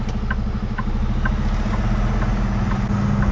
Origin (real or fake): real